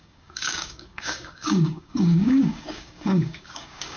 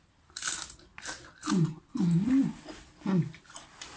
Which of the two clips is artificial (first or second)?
first